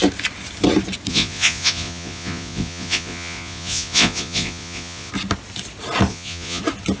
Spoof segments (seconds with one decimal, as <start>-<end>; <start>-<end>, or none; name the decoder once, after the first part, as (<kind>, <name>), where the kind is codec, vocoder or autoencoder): 1.1-5.1 (vocoder, Vocos); 6.1-6.6